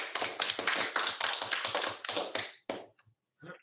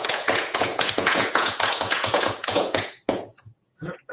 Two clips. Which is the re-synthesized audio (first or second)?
second